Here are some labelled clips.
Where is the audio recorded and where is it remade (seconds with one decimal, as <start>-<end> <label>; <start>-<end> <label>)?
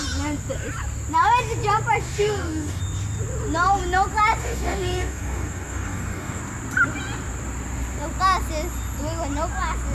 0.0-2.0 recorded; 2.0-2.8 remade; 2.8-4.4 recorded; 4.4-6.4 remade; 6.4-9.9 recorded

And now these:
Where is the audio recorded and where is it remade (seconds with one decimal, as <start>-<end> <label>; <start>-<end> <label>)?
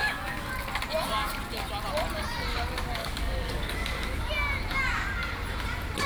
0.0-0.5 remade; 0.5-3.0 recorded; 3.0-4.3 remade; 4.3-6.1 recorded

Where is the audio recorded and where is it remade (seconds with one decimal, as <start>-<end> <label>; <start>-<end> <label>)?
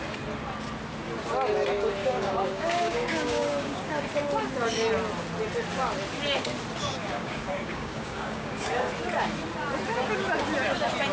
0.0-2.0 recorded; 2.0-4.1 remade; 4.1-7.0 recorded; 7.0-8.9 remade; 8.9-11.1 recorded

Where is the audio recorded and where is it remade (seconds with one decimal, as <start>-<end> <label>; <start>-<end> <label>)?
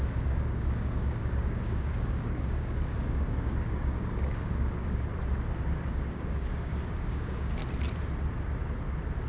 0.0-5.1 remade; 5.1-5.9 recorded; 5.9-7.6 remade; 7.6-9.3 recorded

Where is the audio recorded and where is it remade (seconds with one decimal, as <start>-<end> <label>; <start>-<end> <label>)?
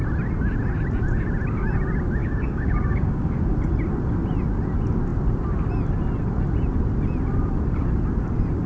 0.0-2.2 recorded; 2.2-3.5 remade; 3.5-8.7 recorded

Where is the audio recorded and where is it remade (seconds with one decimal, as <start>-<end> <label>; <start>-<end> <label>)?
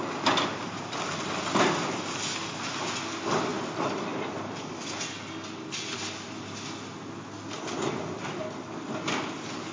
0.0-9.7 recorded